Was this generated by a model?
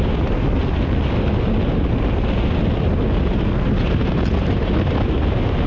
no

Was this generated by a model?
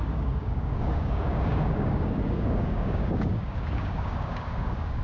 yes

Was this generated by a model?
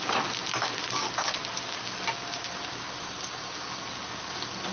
no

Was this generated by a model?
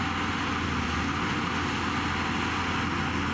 no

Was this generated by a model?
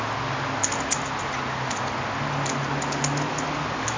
no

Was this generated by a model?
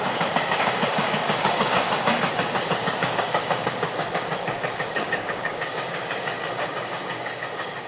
yes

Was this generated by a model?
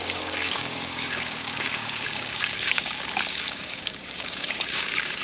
yes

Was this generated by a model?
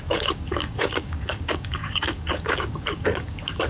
yes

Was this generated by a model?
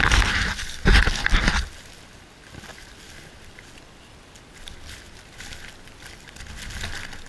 no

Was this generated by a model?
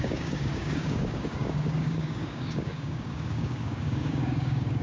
yes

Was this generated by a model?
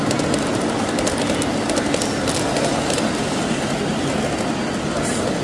no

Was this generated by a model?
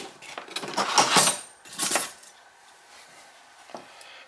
no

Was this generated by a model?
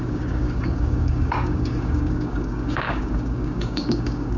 yes